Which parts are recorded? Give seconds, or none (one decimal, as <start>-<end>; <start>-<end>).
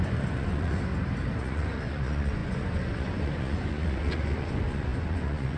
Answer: 0.9-1.4